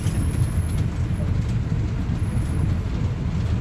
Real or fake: real